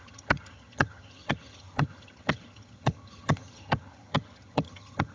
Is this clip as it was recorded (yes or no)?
no